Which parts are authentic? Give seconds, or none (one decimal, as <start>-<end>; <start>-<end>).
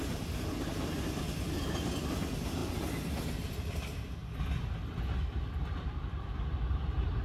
0.0-7.2